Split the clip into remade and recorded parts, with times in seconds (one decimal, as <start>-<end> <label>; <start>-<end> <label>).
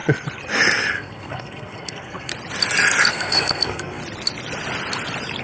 0.0-0.9 recorded; 0.9-2.3 remade; 2.3-3.1 recorded; 3.1-4.0 remade; 4.0-5.4 recorded